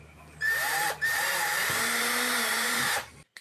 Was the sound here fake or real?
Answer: fake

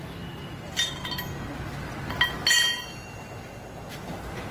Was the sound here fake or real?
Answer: real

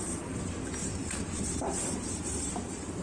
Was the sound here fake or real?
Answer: fake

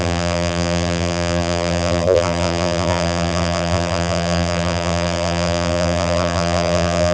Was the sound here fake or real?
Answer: fake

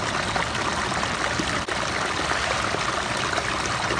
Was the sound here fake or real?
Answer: real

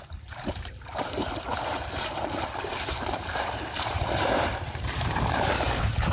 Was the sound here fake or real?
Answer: fake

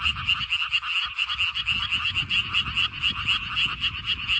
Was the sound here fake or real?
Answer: real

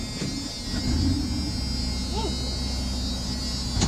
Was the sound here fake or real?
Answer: real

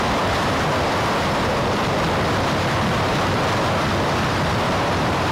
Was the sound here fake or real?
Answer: fake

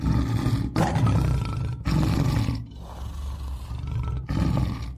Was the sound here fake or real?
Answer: real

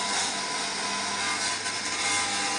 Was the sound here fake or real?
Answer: real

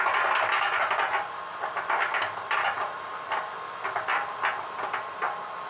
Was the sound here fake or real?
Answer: real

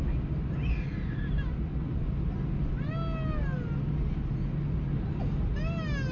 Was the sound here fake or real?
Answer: real